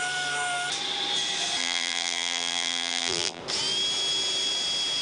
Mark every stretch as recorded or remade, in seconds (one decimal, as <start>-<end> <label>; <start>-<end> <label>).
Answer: 0.0-1.6 recorded; 1.6-3.4 remade; 3.4-5.0 recorded